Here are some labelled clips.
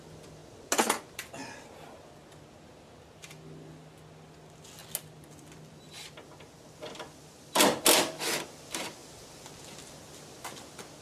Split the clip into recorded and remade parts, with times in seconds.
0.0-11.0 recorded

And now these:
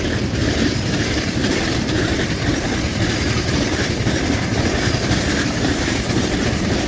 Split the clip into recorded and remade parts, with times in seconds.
0.0-0.4 remade; 0.4-1.2 recorded; 1.2-6.9 remade

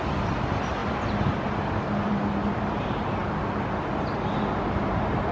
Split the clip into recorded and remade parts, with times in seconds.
0.0-5.3 recorded